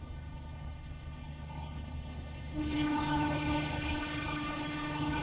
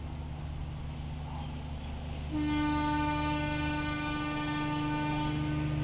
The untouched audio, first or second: second